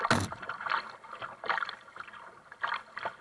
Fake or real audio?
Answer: real